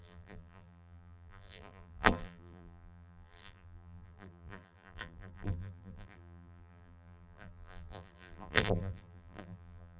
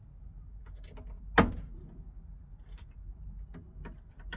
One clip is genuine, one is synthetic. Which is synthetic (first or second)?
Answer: first